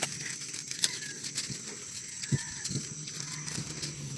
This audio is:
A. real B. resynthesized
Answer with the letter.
A